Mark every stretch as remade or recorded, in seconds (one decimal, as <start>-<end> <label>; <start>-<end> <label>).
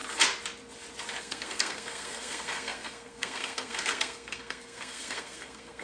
0.0-1.2 recorded; 1.2-5.8 remade